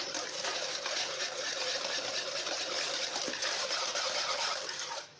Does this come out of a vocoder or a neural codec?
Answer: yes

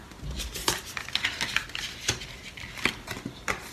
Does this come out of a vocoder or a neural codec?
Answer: no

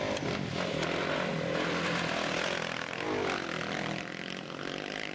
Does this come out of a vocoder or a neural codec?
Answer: no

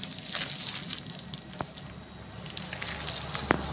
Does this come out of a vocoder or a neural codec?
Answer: no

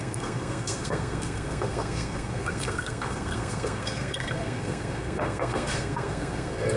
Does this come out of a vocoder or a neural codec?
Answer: yes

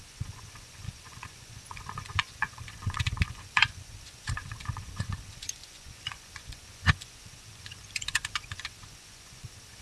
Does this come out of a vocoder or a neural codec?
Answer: yes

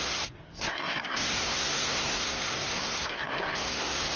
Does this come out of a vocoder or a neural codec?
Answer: yes